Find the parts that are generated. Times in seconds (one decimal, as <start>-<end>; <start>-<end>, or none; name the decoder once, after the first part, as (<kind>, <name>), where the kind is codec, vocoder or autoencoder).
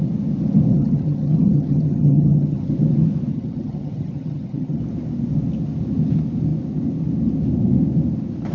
0.7-2.7 (vocoder, HiFi-GAN); 3.3-4.8